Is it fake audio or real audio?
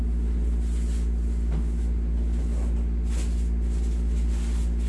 real